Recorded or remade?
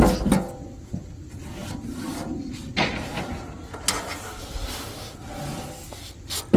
recorded